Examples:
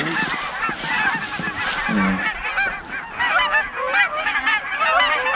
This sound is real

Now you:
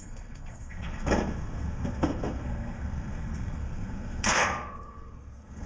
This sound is fake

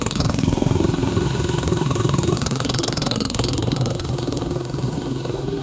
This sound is fake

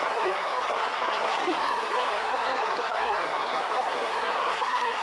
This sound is fake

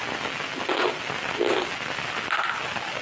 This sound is real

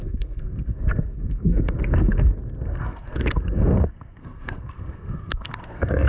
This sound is fake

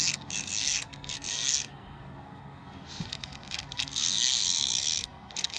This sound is fake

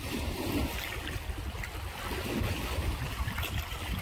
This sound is real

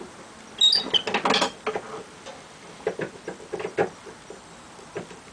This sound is real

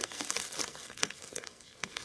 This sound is fake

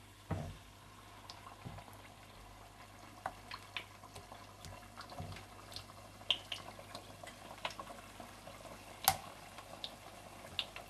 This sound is real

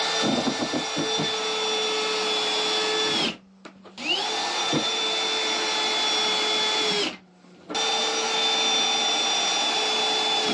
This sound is real